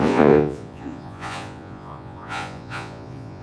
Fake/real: fake